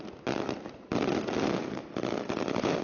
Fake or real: real